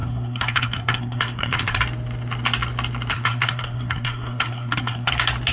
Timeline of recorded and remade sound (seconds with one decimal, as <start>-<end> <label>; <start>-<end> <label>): 0.0-1.8 remade; 1.8-3.1 recorded; 3.1-5.1 remade; 5.1-5.5 recorded